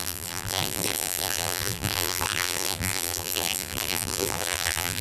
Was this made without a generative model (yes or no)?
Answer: no